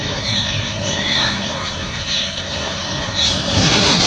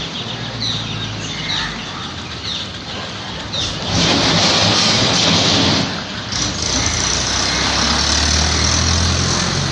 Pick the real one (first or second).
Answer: second